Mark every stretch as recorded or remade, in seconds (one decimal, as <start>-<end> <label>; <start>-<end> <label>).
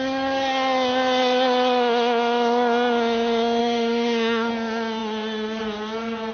0.0-3.6 recorded; 3.6-4.5 remade; 4.5-6.3 recorded